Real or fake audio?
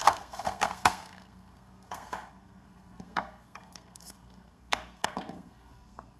fake